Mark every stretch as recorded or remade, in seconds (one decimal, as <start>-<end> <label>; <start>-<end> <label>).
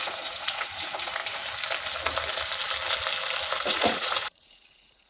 0.0-1.2 remade; 1.2-3.6 recorded; 3.6-5.1 remade